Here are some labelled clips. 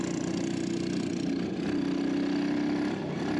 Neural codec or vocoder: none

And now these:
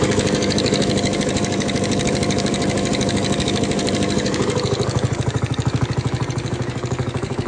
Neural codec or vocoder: codec, DAC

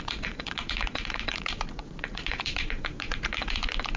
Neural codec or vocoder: vocoder, Vocos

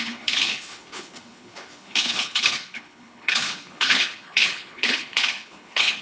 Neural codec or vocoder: codec, HILCodec